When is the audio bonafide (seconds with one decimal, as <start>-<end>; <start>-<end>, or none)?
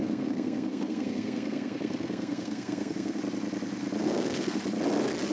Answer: 3.2-4.0; 4.6-5.3